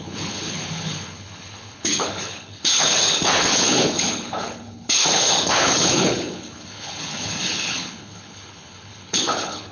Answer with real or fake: fake